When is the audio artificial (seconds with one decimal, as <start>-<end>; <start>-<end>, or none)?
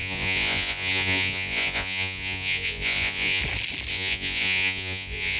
0.0-3.4; 3.9-5.4